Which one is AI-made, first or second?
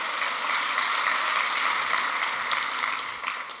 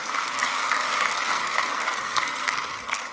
second